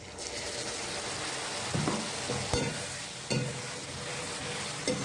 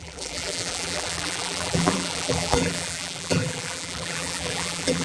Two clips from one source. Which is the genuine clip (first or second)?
first